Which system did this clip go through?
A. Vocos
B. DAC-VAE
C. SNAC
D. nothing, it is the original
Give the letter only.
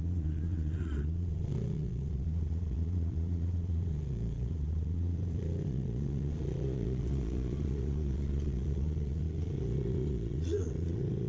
A